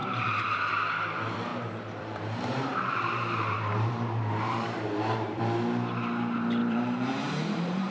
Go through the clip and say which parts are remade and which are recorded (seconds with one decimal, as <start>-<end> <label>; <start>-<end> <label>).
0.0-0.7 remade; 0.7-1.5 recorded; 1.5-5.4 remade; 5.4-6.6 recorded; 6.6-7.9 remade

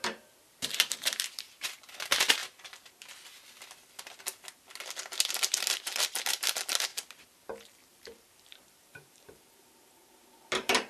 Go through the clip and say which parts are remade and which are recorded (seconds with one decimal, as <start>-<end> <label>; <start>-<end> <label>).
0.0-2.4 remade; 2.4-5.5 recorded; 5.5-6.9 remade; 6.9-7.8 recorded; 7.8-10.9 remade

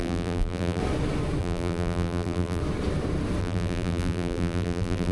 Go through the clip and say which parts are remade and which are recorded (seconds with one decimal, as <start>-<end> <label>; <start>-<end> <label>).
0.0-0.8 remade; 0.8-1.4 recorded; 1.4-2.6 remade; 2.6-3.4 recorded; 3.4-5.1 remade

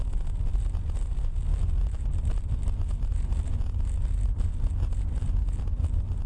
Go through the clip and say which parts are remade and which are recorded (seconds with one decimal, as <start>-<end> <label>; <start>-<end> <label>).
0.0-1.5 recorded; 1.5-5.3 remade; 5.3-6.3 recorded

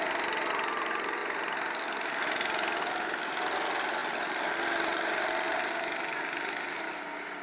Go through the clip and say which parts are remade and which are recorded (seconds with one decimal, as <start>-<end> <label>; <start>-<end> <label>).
0.0-4.0 recorded; 4.0-5.7 remade; 5.7-7.4 recorded